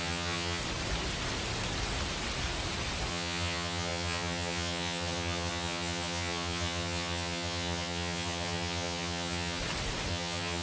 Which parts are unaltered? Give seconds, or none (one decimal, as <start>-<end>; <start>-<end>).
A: 0.6-3.1; 9.6-10.1